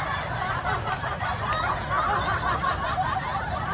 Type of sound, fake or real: real